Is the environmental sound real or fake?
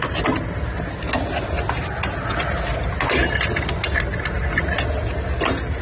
real